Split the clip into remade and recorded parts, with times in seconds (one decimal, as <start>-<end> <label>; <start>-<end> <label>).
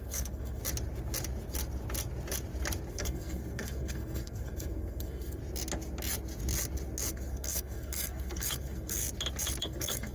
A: 0.0-0.6 remade; 0.6-2.9 recorded; 2.9-5.4 remade; 5.4-7.1 recorded; 7.1-9.0 remade; 9.0-9.6 recorded; 9.6-10.1 remade